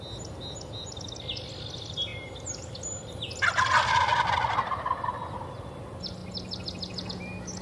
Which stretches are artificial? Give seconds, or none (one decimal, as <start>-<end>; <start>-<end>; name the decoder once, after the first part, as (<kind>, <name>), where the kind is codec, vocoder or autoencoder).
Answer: none